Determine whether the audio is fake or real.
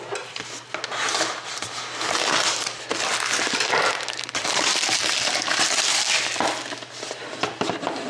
real